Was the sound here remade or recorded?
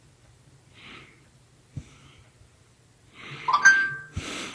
recorded